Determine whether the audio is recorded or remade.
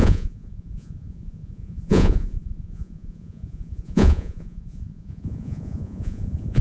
remade